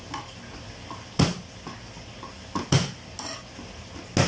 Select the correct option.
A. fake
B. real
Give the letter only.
B